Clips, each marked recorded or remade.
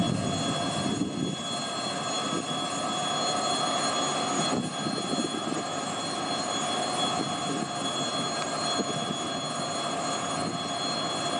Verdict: recorded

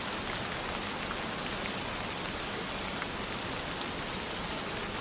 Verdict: recorded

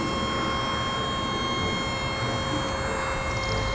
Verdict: recorded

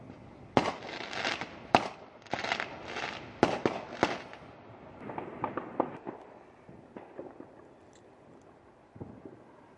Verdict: recorded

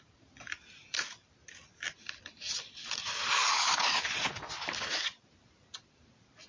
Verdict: recorded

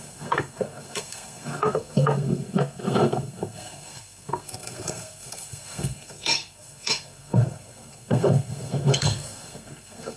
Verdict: remade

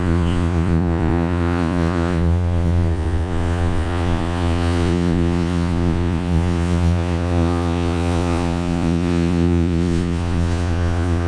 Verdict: remade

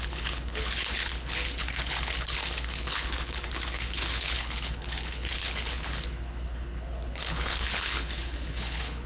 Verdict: remade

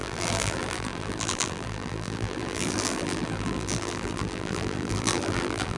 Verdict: remade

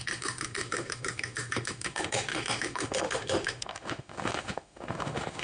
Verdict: remade